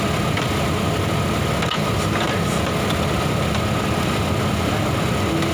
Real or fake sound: real